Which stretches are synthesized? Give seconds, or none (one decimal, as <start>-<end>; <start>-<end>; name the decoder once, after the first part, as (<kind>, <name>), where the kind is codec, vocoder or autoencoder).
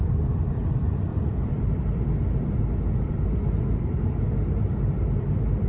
0.0-5.7 (vocoder, BigVGAN v2)